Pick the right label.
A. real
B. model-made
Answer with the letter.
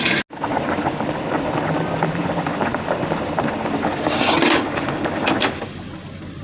A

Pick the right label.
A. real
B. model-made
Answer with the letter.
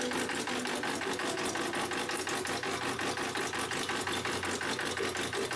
A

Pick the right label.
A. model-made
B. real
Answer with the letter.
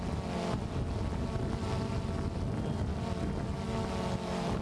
B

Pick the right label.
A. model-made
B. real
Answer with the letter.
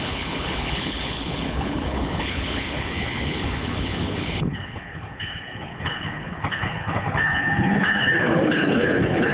A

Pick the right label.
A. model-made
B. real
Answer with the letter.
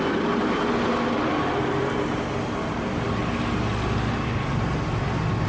B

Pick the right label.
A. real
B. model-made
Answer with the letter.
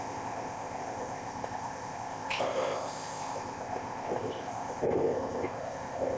B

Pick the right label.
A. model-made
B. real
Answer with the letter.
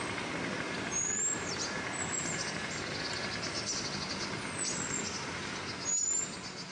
B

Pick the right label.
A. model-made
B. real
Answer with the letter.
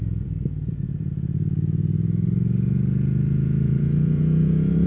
A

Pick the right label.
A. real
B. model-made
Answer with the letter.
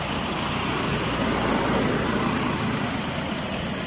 A